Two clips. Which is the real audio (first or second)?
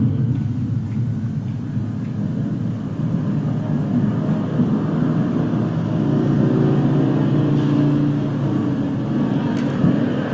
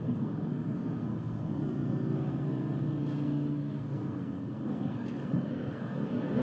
first